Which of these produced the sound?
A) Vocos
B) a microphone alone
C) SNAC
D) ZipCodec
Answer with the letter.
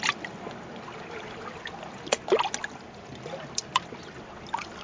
B